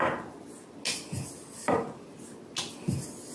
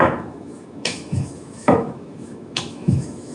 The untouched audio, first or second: first